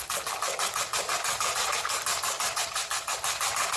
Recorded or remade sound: recorded